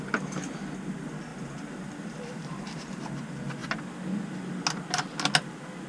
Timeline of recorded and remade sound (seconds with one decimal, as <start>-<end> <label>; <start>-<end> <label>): 0.0-1.3 recorded; 1.3-3.0 remade; 3.0-5.9 recorded